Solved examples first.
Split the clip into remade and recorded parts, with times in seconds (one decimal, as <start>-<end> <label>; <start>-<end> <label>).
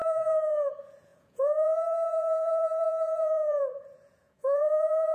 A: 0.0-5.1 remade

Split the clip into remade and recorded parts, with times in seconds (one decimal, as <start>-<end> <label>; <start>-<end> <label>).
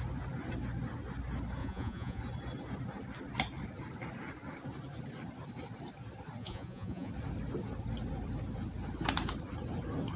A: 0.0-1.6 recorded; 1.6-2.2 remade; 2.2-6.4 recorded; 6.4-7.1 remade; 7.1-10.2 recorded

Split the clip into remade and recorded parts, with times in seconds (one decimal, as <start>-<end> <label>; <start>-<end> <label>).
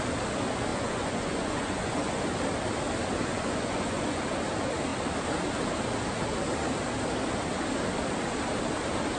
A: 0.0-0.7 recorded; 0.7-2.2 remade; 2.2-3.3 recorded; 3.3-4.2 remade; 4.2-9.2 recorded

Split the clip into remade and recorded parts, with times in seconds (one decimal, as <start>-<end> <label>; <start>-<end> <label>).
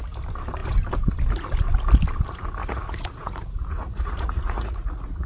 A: 0.0-2.6 recorded; 2.6-5.3 remade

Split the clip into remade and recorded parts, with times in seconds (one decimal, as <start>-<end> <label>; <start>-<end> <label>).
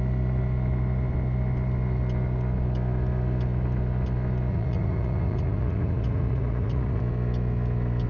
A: 0.0-4.5 recorded; 4.5-7.0 remade; 7.0-8.1 recorded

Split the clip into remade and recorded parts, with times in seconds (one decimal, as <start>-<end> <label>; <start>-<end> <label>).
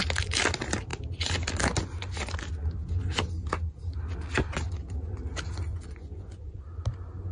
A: 0.0-5.7 recorded; 5.7-6.6 remade; 6.6-7.3 recorded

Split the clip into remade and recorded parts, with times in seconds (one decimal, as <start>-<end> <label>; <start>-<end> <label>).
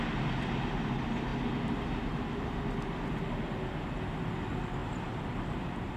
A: 0.0-6.0 recorded